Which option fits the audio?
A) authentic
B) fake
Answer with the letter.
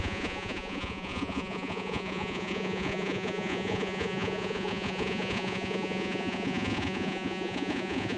B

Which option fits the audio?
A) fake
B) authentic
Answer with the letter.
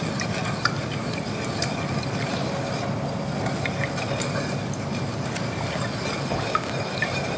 B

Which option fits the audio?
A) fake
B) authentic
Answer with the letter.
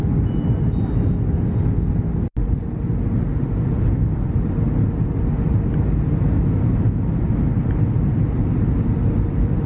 B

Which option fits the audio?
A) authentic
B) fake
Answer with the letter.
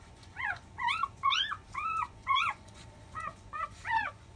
B